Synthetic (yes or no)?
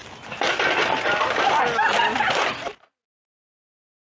no